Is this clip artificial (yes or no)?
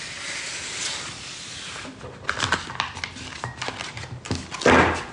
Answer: no